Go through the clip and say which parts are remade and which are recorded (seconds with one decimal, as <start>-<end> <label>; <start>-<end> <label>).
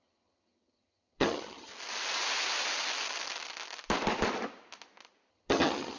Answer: 0.0-1.7 remade; 1.7-5.3 recorded; 5.3-6.0 remade